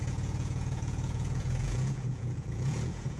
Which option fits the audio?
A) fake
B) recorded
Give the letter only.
A